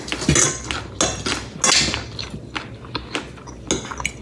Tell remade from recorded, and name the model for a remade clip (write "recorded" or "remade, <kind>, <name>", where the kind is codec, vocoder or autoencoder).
recorded